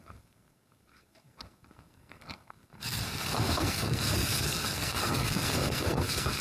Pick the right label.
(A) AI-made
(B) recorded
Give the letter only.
A